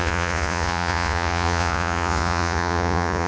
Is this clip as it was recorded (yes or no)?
no